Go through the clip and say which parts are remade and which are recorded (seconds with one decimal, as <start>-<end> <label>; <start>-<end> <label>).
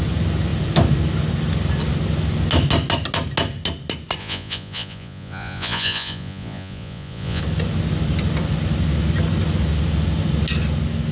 0.0-4.2 recorded; 4.2-7.4 remade; 7.4-11.1 recorded